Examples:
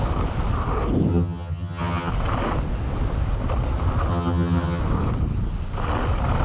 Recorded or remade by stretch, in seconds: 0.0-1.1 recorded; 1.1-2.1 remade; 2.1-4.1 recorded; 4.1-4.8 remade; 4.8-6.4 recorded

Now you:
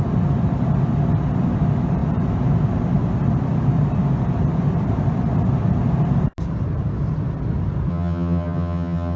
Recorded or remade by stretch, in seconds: 0.0-7.9 recorded; 7.9-9.2 remade